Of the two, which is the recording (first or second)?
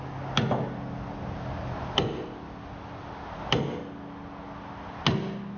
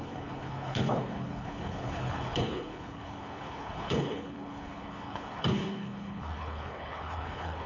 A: first